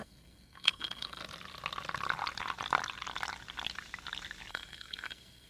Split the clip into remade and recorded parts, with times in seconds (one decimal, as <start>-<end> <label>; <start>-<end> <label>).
0.0-1.2 remade; 1.2-4.5 recorded; 4.5-5.5 remade